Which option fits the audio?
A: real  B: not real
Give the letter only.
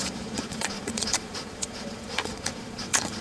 B